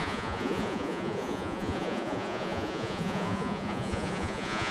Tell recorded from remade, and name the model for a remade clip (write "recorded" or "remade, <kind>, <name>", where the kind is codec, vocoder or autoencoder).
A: remade, vocoder, Vocos